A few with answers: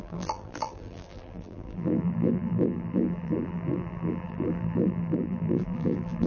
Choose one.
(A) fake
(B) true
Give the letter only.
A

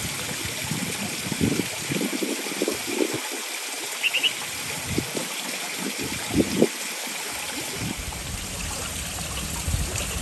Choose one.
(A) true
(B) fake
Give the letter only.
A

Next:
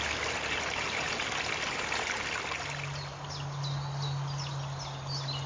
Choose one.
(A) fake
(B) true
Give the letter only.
B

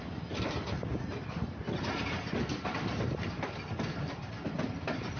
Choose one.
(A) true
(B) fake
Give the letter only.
B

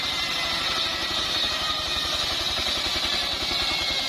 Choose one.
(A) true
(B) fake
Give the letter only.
A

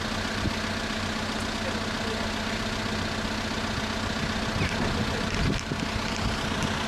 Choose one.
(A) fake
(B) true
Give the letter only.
B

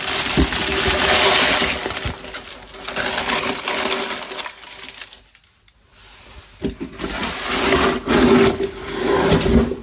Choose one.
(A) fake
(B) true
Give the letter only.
B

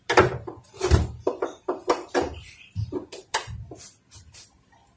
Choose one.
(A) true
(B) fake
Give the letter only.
B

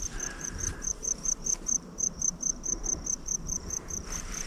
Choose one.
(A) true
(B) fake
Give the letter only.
B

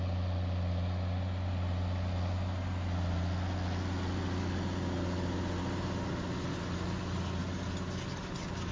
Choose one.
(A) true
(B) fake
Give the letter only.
A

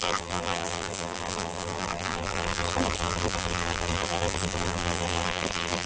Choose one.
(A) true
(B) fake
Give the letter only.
B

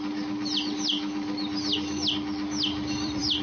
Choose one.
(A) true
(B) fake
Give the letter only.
B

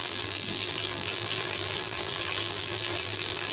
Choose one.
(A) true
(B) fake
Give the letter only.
B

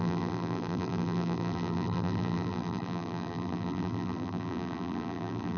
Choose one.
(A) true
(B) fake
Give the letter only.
B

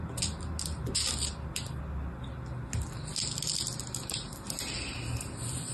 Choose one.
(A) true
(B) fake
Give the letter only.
A